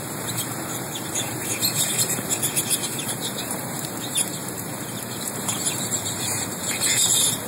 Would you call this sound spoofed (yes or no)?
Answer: yes